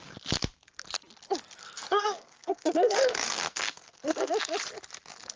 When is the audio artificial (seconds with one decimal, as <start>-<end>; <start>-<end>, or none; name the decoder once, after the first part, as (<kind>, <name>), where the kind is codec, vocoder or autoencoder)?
1.6-4.3 (codec, SNAC)